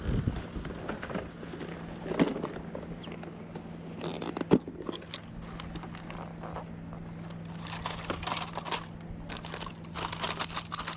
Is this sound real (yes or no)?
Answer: yes